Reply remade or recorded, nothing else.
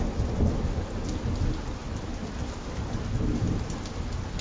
recorded